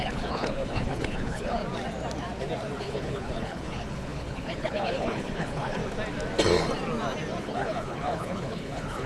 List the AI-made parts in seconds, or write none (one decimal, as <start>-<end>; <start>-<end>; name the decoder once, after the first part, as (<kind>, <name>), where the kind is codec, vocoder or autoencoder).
0.0-1.6 (codec, HILCodec); 2.8-5.8; 7.4-9.1